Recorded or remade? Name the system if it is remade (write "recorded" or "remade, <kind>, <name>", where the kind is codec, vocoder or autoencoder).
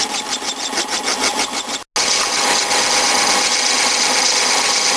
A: recorded